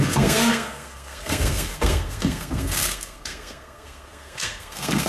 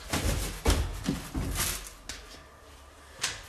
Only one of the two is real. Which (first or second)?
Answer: second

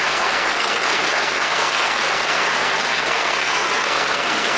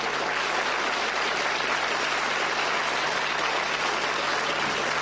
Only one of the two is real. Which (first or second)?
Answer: second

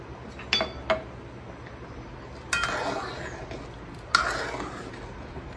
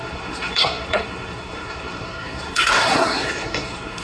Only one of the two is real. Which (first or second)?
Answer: first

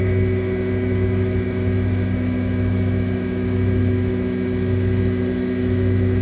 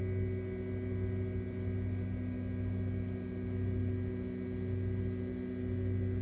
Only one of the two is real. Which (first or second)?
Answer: second